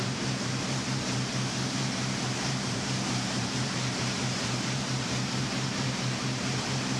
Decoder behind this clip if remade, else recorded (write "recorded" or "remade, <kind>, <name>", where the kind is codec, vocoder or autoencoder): remade, vocoder, BigVGAN v2